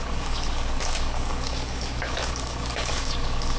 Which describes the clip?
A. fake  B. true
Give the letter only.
A